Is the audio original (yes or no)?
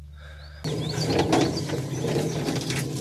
yes